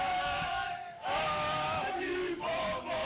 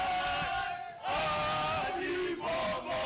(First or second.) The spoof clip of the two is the first